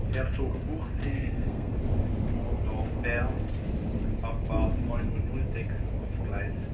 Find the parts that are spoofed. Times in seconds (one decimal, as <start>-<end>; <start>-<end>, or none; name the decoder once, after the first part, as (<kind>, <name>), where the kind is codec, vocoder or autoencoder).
1.0-1.7 (codec, SNAC)